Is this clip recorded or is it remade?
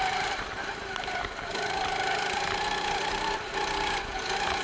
remade